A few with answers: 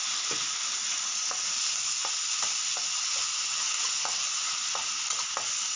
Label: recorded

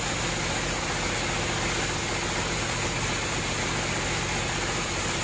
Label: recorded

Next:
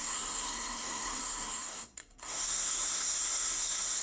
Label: remade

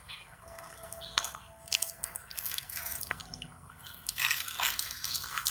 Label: remade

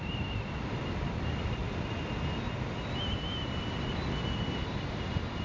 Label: recorded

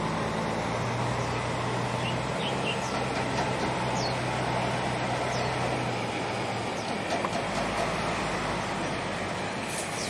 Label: recorded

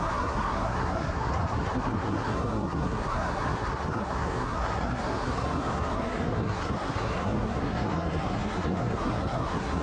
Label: remade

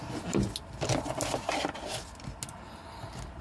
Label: recorded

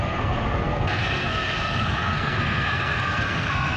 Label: remade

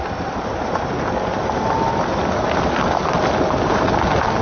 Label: recorded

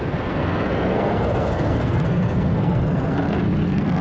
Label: remade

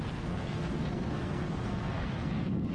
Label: remade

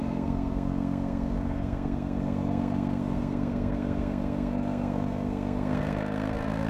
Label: remade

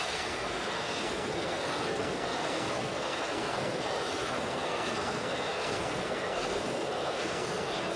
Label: remade